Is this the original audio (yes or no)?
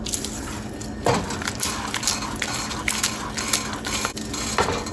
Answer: yes